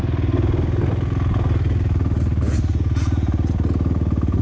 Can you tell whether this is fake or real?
real